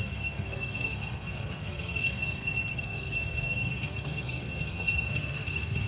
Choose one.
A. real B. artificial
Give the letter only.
B